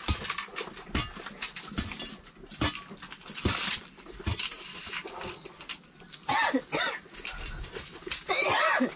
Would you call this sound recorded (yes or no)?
yes